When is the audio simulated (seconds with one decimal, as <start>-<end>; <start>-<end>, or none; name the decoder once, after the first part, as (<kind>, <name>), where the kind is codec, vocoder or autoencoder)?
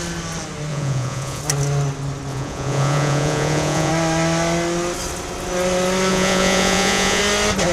0.7-1.4 (vocoder, Vocos); 2.3-3.9; 6.1-7.2